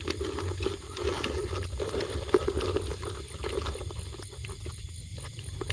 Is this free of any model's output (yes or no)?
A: yes